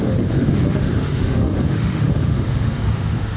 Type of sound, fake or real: fake